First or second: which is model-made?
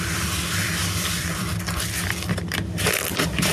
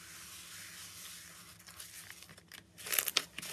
first